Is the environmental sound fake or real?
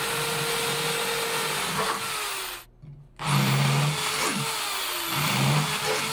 real